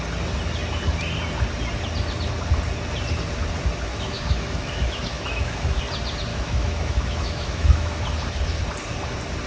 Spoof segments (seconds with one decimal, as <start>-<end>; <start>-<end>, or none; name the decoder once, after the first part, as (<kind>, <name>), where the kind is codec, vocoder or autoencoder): 3.9-5.8 (autoencoder, DAC-VAE); 6.3-8.0